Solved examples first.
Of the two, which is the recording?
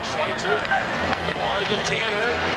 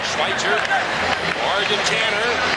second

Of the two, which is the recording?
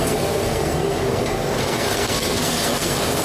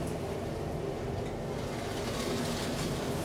second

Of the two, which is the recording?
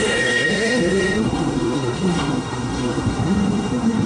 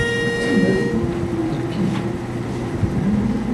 second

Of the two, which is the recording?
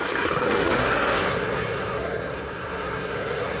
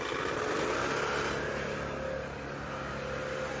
second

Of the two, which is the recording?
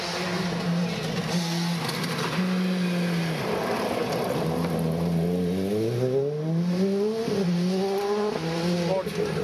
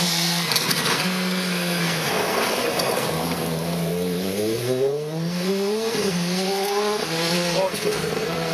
first